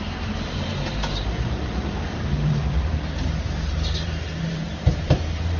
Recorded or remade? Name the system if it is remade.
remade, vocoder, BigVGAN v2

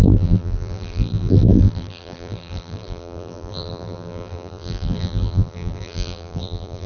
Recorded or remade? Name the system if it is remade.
remade, vocoder, BigVGAN v2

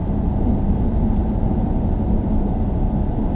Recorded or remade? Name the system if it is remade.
recorded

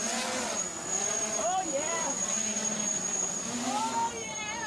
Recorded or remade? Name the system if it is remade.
recorded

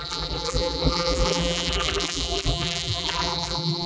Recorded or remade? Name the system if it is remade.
remade, vocoder, BigVGAN v2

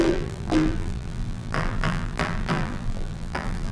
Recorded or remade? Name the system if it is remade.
remade, vocoder, BigVGAN v2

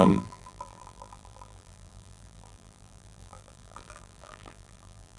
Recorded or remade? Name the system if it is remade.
remade, vocoder, BigVGAN v2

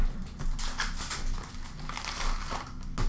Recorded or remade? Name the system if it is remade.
recorded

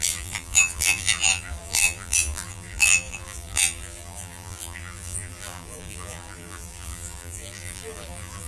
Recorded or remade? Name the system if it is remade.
remade, vocoder, BigVGAN v2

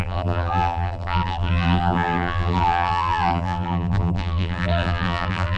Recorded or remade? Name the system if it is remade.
remade, vocoder, BigVGAN v2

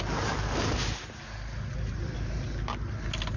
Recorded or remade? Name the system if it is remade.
recorded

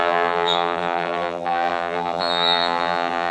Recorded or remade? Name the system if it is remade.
remade, vocoder, BigVGAN v2